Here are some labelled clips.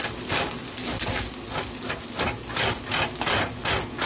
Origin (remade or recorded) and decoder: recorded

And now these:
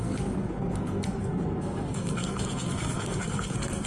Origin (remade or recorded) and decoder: remade, codec, SNAC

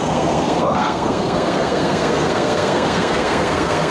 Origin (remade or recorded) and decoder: remade, codec, SNAC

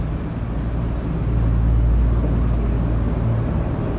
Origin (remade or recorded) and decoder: recorded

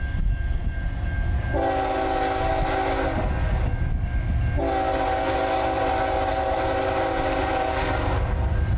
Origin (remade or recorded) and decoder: recorded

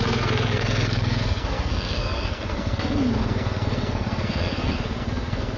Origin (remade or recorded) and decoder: remade, codec, SNAC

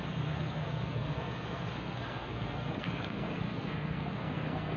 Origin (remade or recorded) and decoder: remade, codec, SNAC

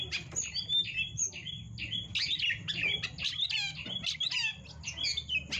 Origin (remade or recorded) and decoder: recorded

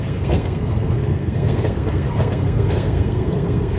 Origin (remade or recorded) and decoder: remade, codec, SNAC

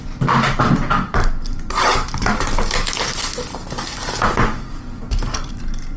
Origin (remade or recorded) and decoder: recorded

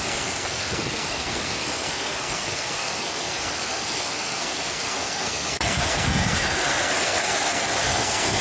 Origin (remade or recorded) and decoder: remade, codec, SNAC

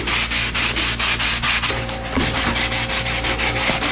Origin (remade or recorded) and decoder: recorded